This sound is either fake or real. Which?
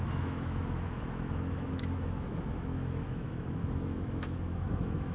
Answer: fake